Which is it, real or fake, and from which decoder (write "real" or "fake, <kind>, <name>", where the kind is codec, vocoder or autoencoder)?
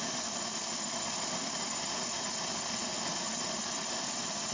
real